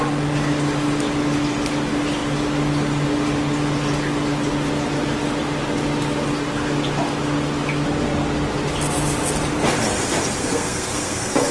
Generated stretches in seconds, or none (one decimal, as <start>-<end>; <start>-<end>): 10.4-11.5